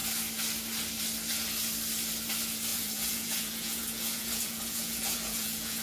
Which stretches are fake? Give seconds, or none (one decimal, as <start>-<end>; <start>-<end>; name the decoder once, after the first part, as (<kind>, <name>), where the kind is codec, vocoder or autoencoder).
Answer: 2.7-5.8 (vocoder, Vocos)